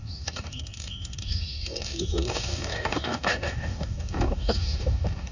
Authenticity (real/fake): fake